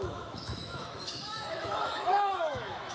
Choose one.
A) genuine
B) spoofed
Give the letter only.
B